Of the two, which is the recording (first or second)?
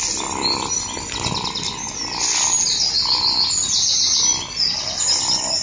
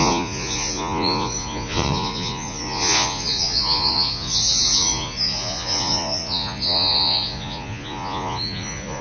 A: first